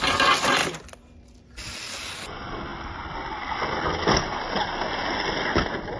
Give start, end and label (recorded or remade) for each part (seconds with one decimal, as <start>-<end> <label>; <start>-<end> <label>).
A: 0.0-6.0 recorded